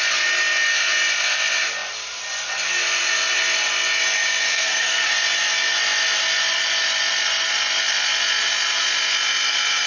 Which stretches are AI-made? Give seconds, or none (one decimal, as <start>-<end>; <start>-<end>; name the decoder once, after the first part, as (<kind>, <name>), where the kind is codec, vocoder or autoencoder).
4.5-5.1 (codec, SNAC)